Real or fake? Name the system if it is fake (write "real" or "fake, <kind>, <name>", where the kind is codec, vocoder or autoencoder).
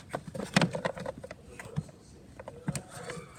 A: real